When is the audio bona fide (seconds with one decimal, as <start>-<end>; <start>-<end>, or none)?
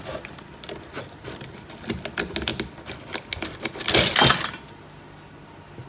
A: 0.0-5.9